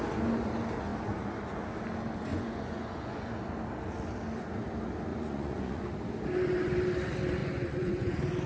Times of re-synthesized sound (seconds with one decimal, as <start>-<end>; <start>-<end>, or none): 2.3-3.3; 5.1-5.9; 7.4-8.1